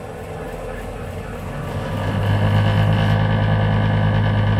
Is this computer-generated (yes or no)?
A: no